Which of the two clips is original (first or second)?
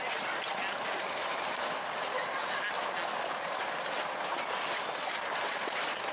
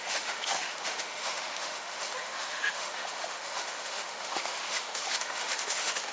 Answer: first